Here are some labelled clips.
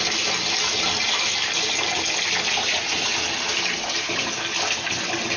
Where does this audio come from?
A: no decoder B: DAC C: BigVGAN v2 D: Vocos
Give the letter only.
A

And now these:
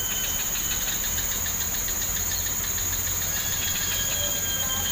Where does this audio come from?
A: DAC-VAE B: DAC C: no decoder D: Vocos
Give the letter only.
C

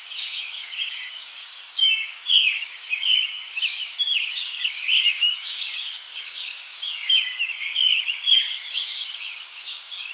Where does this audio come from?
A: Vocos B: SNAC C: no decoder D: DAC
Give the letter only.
D